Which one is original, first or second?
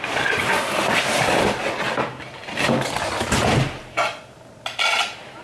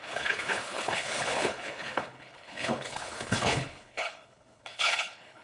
first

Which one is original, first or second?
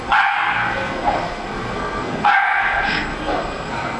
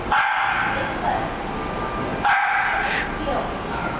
second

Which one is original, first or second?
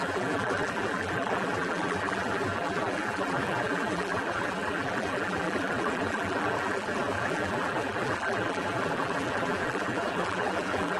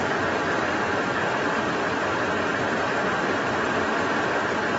second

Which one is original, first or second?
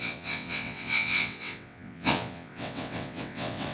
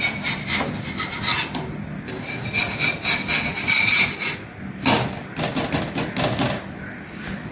second